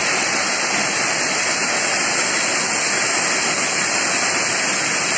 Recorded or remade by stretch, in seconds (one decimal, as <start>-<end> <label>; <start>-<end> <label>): 0.0-5.2 recorded